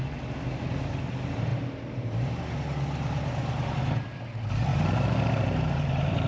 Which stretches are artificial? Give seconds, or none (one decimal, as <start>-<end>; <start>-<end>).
4.7-6.3